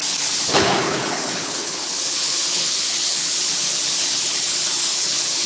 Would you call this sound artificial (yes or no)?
yes